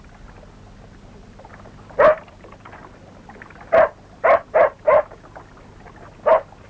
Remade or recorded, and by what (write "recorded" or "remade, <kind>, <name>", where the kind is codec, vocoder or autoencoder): recorded